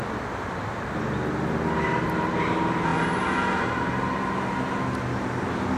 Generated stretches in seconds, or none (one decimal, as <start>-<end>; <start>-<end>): none